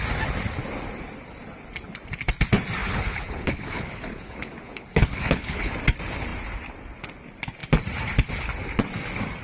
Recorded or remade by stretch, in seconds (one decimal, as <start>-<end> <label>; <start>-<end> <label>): 0.0-2.8 recorded; 2.8-5.7 remade; 5.7-9.4 recorded